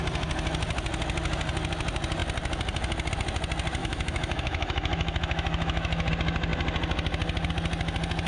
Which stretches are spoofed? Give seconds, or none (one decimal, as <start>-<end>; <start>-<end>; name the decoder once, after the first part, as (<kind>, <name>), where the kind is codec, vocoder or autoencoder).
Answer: 3.8-6.1 (autoencoder, DAC-VAE)